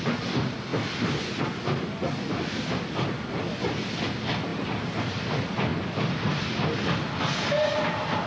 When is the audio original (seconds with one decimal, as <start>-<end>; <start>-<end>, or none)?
0.0-4.5; 5.0-8.3